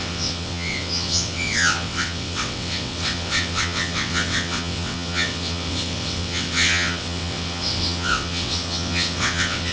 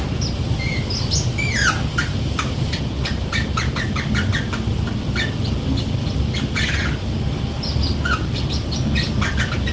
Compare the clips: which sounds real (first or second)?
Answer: second